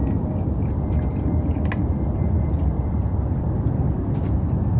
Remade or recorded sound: recorded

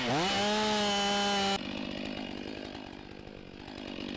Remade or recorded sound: recorded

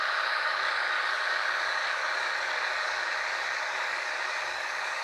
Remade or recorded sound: remade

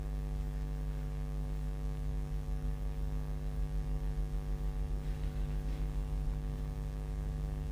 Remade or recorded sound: remade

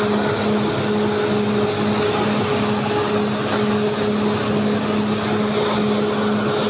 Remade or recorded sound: recorded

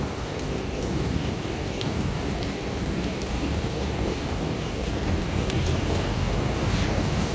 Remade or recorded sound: remade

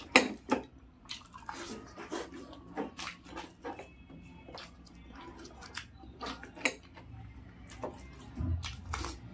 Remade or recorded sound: recorded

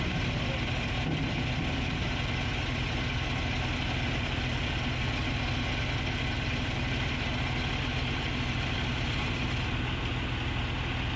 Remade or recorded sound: recorded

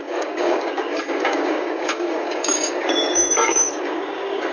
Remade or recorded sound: remade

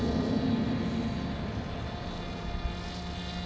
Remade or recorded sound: recorded